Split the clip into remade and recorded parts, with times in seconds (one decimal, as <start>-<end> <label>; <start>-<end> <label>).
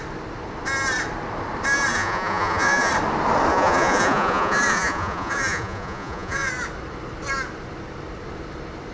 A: 0.0-1.9 recorded; 1.9-2.9 remade; 2.9-3.5 recorded; 3.5-6.5 remade; 6.5-8.9 recorded